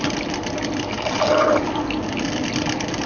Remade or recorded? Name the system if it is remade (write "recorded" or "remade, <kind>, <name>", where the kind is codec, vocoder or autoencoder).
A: recorded